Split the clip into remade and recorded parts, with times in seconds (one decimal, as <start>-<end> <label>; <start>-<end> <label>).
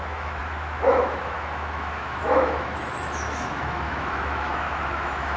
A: 0.0-5.4 remade